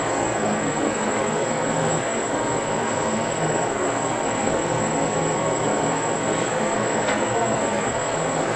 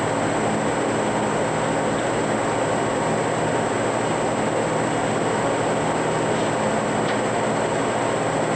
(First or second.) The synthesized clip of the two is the first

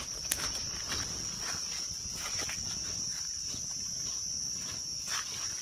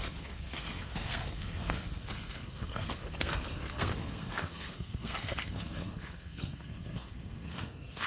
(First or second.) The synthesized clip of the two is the second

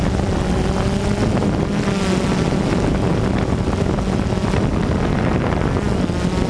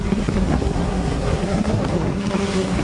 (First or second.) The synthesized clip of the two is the second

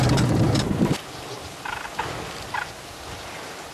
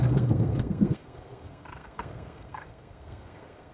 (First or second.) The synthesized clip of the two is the second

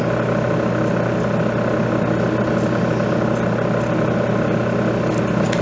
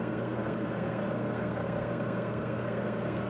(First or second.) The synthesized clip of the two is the second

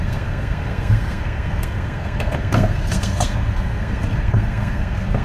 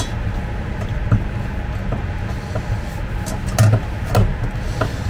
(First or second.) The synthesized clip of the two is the first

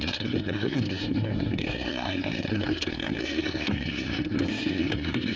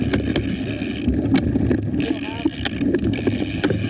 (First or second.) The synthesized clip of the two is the first